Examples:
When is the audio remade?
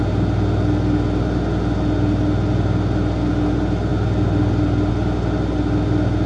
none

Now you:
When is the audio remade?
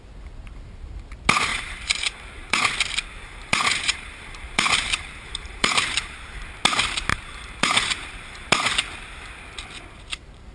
1.5-2.6 (vocoder, BigVGAN v2); 3.2-6.2; 7.1-8.5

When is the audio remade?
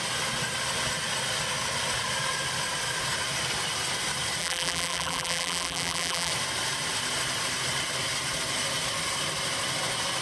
4.4-6.3 (vocoder, BigVGAN v2)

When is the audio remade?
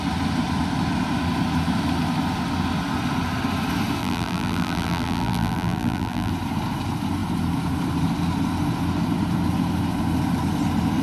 4.0-6.3 (vocoder, BigVGAN v2)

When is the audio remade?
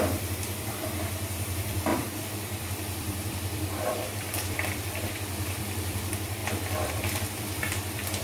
0.0-8.2 (vocoder, BigVGAN v2)